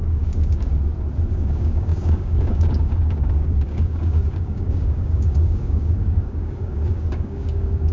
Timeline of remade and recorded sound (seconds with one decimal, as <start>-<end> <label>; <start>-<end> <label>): 0.0-0.7 remade; 0.7-1.3 recorded; 1.3-7.9 remade